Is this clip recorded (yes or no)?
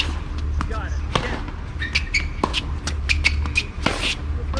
yes